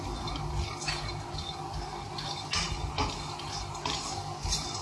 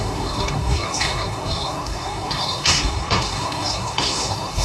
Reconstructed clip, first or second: second